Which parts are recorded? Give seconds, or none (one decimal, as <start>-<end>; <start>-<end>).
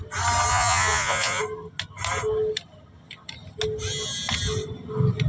0.0-0.5; 1.4-5.3